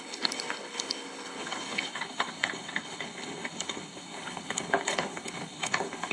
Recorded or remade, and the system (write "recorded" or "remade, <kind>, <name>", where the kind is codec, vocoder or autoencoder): remade, codec, HILCodec